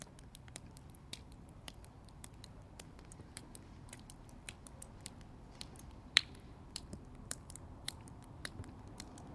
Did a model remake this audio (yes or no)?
yes